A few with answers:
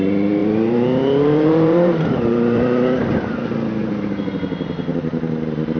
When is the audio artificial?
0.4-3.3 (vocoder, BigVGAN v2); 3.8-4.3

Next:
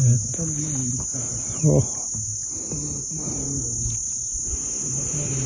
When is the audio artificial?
none